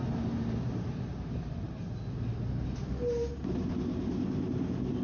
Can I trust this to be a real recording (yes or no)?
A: yes